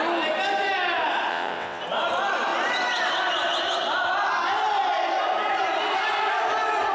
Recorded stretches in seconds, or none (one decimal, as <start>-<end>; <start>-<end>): 0.0-1.3; 1.8-6.9